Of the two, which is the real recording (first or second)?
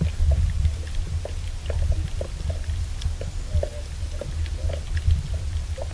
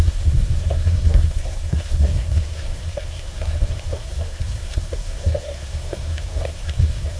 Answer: first